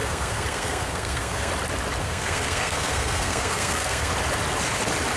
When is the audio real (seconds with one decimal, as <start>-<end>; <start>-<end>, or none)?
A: 1.5-2.0; 4.1-5.2